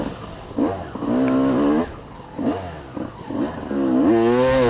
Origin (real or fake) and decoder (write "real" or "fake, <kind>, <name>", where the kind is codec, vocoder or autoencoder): real